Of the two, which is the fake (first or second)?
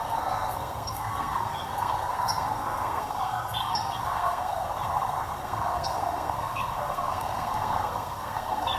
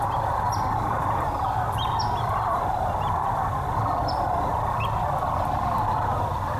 first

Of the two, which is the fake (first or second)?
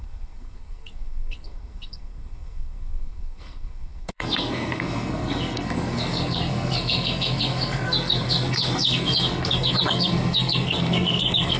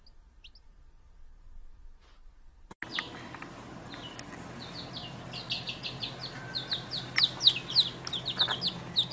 first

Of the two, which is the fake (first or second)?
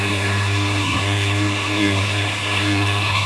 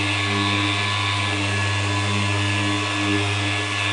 first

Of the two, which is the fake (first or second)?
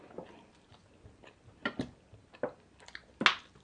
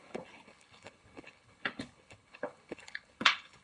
second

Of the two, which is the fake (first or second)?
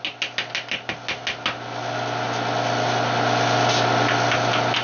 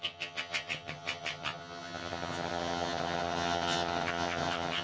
second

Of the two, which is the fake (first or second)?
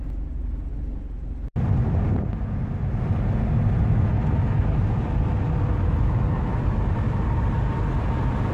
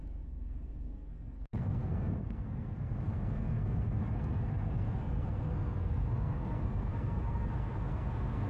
second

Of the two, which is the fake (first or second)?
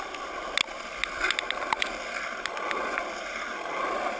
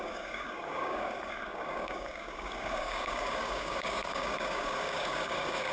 second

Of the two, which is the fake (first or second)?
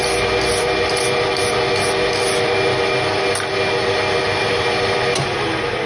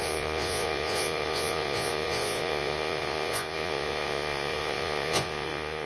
second